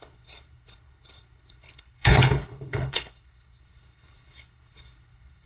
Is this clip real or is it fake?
fake